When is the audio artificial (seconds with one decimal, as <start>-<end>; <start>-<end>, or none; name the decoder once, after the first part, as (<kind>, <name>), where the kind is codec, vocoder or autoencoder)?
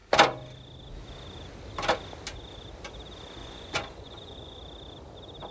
3.4-4.6 (vocoder, Vocos)